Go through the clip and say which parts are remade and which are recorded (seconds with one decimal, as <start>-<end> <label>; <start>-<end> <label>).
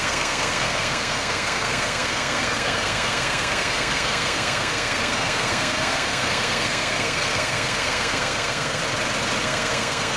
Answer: 0.0-8.8 remade; 8.8-9.4 recorded; 9.4-10.2 remade